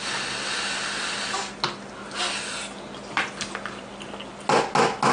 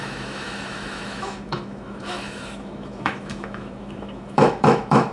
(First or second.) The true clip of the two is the first